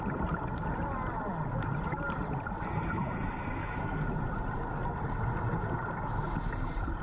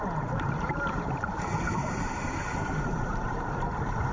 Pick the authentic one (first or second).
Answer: first